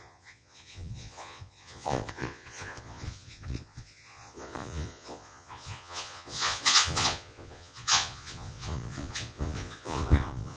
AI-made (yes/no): yes